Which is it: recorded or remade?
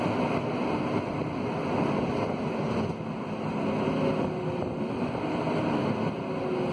recorded